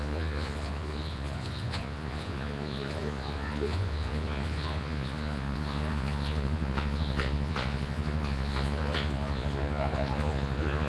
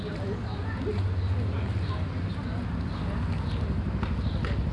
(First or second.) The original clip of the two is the second